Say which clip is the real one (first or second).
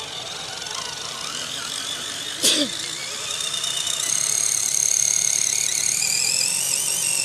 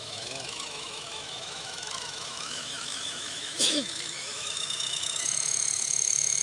first